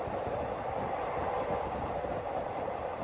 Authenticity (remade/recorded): remade